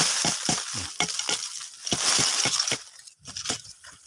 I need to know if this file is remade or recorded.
recorded